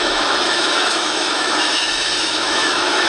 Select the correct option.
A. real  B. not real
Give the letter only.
B